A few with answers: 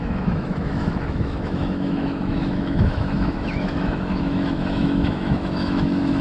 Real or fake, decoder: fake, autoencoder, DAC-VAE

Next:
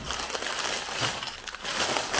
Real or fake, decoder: real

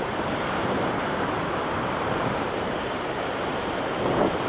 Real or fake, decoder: fake, vocoder, BigVGAN v2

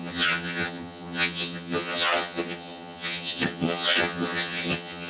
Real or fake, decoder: fake, vocoder, HiFi-GAN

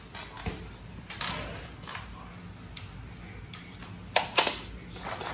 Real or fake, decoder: real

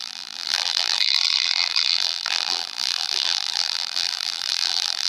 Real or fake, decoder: fake, vocoder, BigVGAN v2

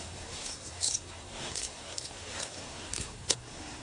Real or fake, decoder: fake, codec, SNAC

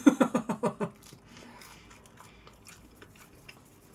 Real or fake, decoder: real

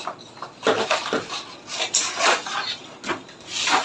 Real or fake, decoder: real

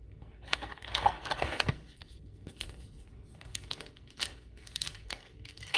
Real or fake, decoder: fake, codec, SNAC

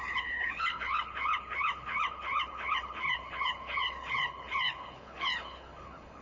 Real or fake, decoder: fake, codec, HILCodec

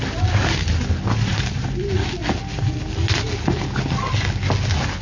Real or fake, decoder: real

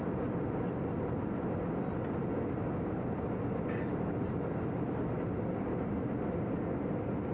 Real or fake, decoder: real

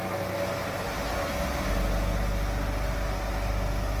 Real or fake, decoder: real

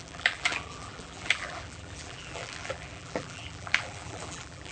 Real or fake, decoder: fake, vocoder, BigVGAN v2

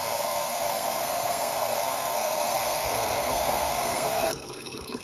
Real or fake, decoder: fake, codec, SNAC